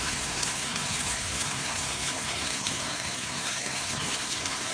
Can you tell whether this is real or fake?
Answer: fake